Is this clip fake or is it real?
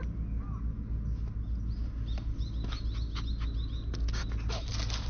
real